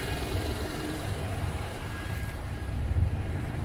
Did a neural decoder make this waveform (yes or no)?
yes